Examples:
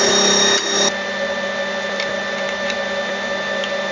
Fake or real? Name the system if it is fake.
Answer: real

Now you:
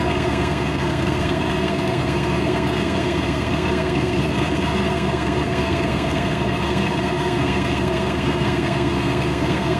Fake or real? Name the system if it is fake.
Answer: fake, codec, SNAC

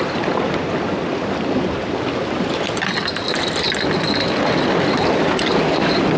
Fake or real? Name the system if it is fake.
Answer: real